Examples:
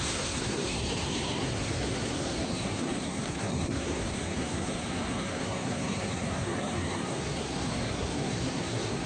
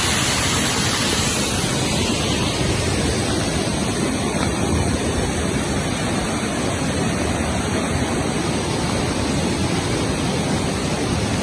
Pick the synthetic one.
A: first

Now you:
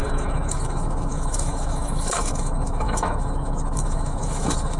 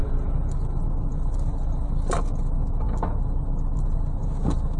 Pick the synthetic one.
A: first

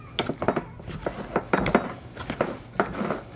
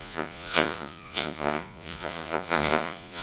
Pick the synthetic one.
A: second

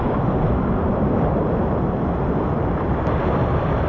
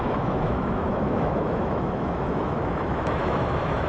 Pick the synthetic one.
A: second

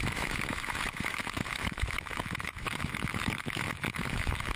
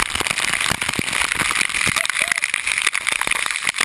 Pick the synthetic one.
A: first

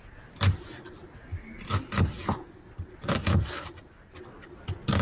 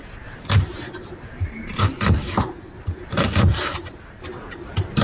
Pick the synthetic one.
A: second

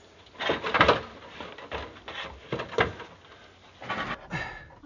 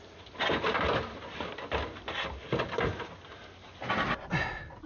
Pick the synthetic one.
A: second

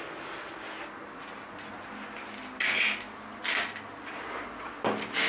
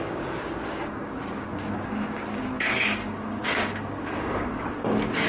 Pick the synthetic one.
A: second